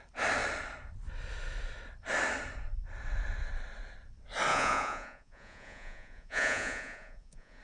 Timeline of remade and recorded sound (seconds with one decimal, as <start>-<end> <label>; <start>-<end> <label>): 0.0-4.5 recorded; 4.5-7.6 remade